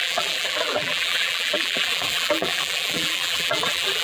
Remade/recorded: remade